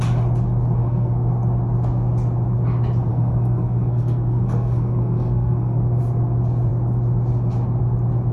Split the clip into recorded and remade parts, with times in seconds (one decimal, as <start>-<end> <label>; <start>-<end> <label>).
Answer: 0.0-0.8 recorded; 0.8-1.3 remade; 1.3-3.1 recorded; 3.1-6.0 remade; 6.0-8.3 recorded

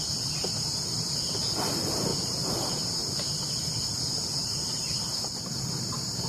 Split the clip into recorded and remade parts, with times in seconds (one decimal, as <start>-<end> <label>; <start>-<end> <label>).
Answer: 0.0-6.3 recorded

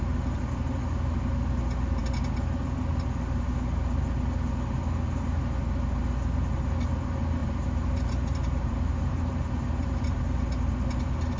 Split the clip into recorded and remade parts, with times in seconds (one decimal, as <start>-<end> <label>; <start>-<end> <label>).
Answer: 0.0-7.4 recorded; 7.4-10.2 remade; 10.2-11.4 recorded

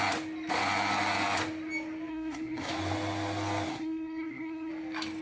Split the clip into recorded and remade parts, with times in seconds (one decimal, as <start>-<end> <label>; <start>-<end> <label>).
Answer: 0.0-2.1 recorded; 2.1-2.7 remade; 2.7-3.7 recorded; 3.7-4.7 remade; 4.7-5.2 recorded

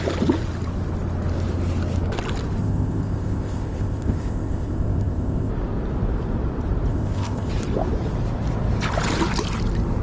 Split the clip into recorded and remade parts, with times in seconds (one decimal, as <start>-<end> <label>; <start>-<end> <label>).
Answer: 0.0-2.6 recorded; 2.6-5.5 remade; 5.5-6.9 recorded; 6.9-7.5 remade; 7.5-10.0 recorded

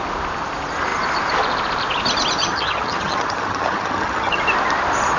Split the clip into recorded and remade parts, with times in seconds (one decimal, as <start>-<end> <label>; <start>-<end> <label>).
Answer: 0.0-2.4 recorded; 2.4-4.4 remade; 4.4-5.2 recorded

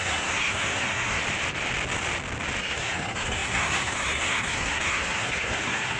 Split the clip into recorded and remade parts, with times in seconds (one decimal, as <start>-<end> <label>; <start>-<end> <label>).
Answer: 0.0-1.2 remade; 1.2-2.6 recorded; 2.6-6.0 remade